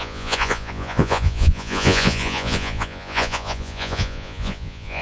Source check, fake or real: fake